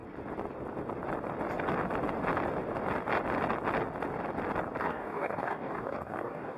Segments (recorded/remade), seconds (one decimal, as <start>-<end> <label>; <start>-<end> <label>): 0.0-4.8 recorded; 4.8-6.6 remade